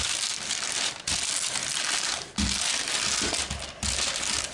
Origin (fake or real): real